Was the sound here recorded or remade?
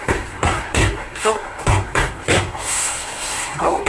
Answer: remade